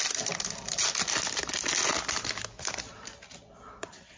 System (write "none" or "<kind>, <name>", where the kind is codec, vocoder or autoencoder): none